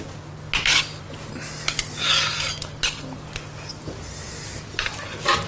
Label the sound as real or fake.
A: real